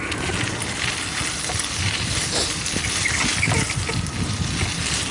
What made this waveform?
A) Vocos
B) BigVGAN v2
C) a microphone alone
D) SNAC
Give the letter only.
C